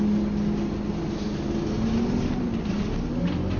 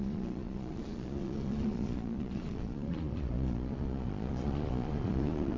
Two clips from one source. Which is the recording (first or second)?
first